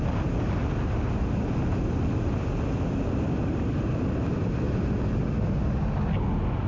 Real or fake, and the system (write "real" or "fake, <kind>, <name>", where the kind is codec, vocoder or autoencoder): real